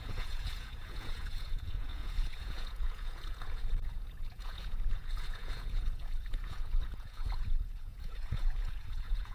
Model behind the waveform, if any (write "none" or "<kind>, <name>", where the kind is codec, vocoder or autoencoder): vocoder, Vocos